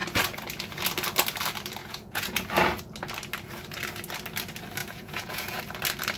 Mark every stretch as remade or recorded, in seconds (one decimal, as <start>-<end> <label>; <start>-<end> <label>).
0.0-1.8 recorded; 1.8-2.4 remade; 2.4-4.8 recorded; 4.8-5.6 remade; 5.6-6.2 recorded